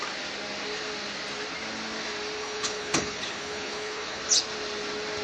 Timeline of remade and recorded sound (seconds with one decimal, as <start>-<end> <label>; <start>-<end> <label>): 0.0-2.4 recorded; 2.4-4.2 remade; 4.2-5.2 recorded